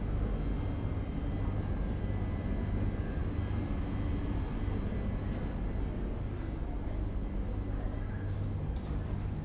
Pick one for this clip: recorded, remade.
recorded